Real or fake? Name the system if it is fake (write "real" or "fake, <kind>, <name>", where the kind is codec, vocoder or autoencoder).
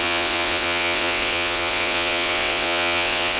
fake, vocoder, WaveNeXt